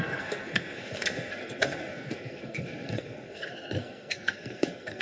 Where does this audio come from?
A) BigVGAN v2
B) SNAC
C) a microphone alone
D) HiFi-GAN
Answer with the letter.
B